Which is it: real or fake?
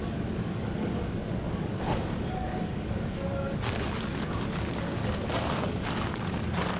fake